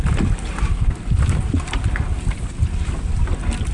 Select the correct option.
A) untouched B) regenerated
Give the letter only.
A